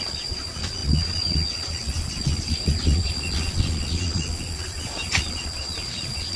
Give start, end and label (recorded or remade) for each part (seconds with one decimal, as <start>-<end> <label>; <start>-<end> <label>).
0.0-6.4 remade